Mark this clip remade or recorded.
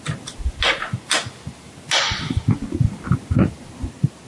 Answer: recorded